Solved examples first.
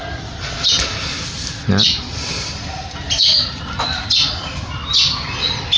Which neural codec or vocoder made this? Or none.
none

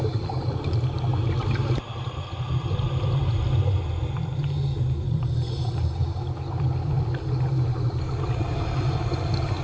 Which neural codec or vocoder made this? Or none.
none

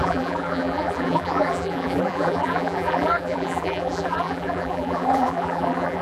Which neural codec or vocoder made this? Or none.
vocoder, BigVGAN v2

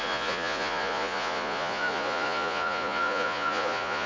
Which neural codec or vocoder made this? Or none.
vocoder, Vocos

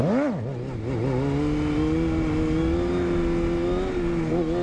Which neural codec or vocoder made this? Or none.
none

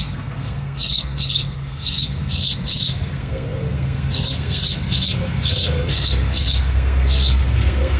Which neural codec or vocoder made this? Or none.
codec, SNAC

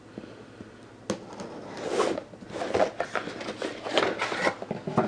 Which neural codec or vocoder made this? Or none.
none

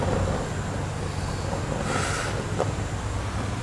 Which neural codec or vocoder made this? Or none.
none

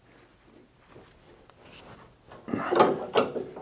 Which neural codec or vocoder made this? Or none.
none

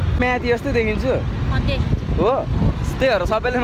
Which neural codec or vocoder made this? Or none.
none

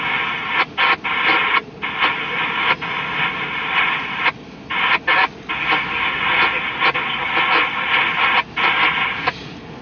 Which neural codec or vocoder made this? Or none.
none